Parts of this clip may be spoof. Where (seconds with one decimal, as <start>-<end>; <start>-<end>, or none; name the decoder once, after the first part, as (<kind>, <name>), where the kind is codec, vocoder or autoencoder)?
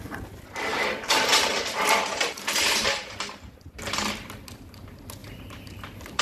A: 0.7-3.8 (vocoder, BigVGAN v2); 5.2-6.2